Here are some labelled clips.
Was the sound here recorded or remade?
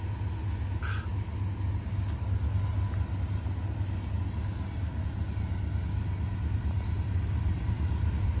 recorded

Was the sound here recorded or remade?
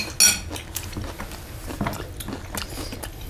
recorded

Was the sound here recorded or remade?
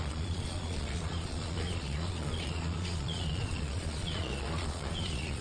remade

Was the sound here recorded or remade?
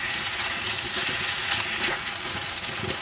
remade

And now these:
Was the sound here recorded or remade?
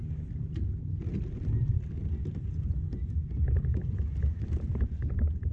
recorded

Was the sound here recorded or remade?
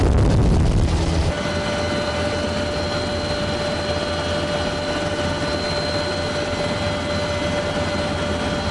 recorded